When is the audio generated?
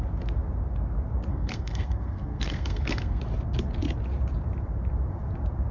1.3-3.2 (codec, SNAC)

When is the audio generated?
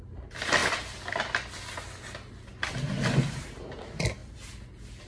none